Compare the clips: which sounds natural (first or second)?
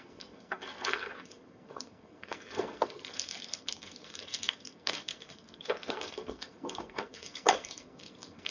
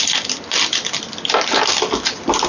second